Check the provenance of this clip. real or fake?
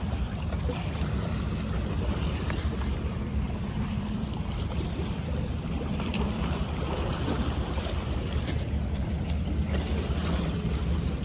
fake